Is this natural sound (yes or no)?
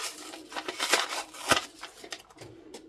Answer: yes